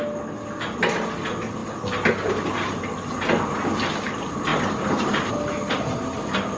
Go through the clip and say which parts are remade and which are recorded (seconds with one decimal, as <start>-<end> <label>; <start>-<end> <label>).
0.0-6.6 recorded